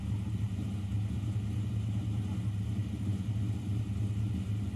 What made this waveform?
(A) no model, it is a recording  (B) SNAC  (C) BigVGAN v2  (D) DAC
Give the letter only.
A